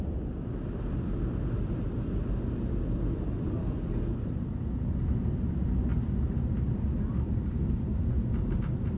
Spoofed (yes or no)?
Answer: no